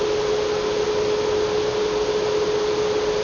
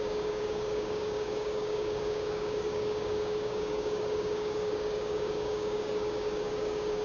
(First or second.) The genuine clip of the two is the first